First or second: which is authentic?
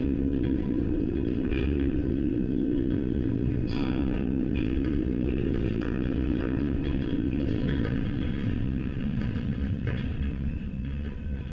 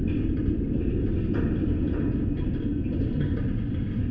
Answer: second